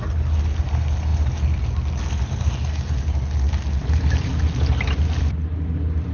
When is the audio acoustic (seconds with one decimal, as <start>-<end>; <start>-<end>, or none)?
0.0-6.1